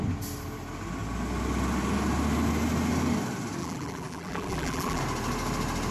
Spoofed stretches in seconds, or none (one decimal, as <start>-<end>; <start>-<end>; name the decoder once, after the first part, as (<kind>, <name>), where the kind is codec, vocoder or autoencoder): 3.6-5.0 (vocoder, BigVGAN v2)